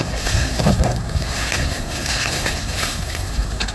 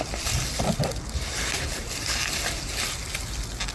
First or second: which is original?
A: second